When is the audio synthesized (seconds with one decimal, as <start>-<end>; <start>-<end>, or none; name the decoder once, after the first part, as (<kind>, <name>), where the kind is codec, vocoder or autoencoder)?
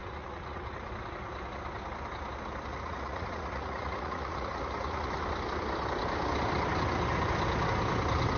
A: 0.0-0.9 (vocoder, Vocos); 2.7-5.2